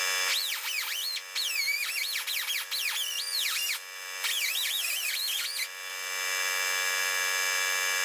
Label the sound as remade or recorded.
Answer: recorded